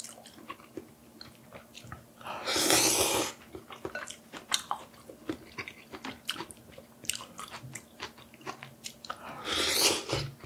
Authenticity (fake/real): real